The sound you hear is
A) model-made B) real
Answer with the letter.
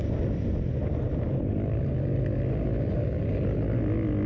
B